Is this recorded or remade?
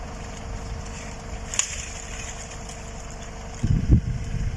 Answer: recorded